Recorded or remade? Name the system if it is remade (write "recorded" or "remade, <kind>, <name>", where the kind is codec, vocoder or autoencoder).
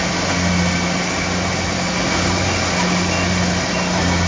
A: recorded